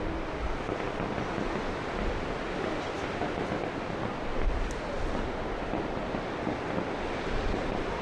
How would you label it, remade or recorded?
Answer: recorded